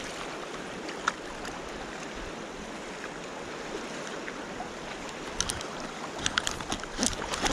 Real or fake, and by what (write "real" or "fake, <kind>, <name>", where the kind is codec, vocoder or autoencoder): real